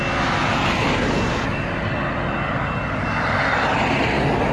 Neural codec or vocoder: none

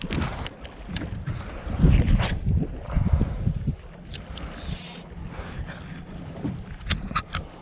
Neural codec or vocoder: none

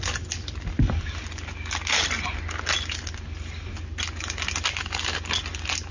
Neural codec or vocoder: none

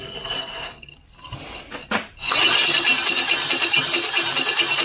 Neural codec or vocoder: none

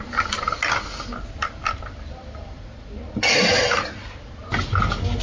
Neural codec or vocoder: none